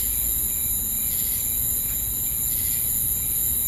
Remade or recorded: recorded